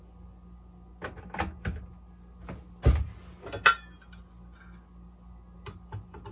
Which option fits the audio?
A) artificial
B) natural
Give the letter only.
B